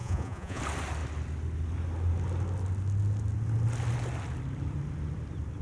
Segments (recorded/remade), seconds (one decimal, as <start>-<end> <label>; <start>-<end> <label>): 0.0-0.6 remade; 0.6-5.6 recorded